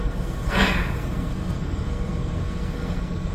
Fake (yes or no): yes